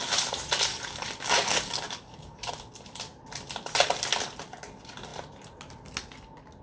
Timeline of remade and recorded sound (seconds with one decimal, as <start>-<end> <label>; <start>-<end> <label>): 0.0-0.7 recorded; 0.7-2.5 remade; 2.5-6.6 recorded